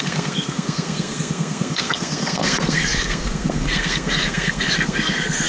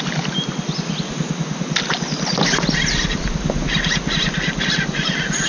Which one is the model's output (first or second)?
first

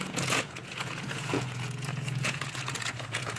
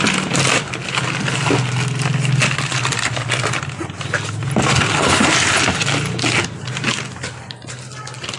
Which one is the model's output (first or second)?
first